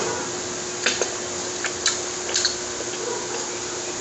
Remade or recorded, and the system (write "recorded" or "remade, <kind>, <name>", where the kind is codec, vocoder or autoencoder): recorded